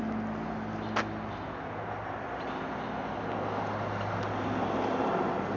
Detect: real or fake real